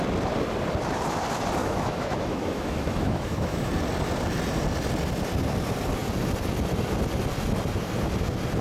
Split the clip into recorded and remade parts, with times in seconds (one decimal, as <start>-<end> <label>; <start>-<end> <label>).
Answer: 0.0-1.6 recorded; 1.6-3.7 remade; 3.7-8.6 recorded